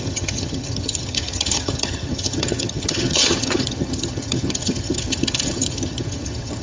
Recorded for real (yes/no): no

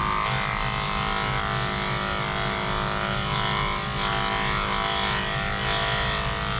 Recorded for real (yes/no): yes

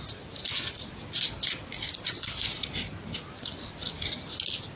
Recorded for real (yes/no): yes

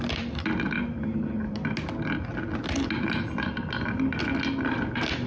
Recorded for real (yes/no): yes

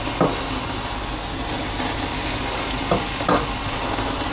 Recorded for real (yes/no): yes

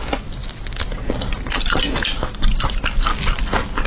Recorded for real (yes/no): yes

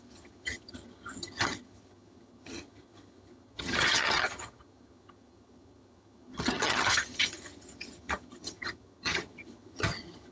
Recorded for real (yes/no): no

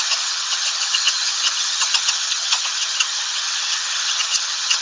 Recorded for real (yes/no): no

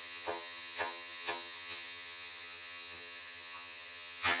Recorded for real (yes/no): no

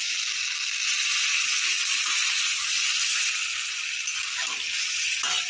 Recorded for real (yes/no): yes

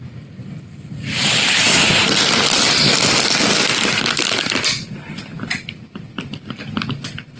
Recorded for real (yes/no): yes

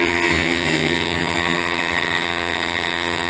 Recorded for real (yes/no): no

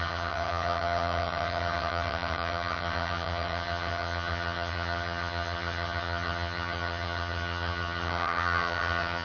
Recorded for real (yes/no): no